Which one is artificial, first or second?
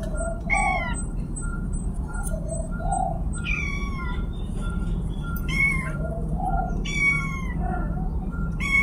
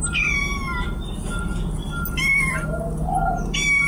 first